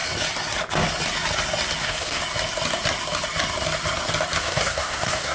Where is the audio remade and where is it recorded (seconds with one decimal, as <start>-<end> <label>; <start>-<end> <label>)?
0.0-1.8 recorded; 1.8-2.2 remade; 2.2-4.4 recorded; 4.4-5.3 remade